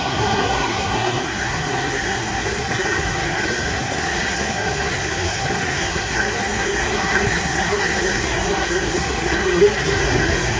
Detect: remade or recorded remade